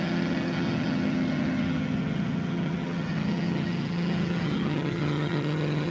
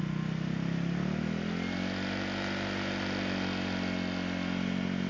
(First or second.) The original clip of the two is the second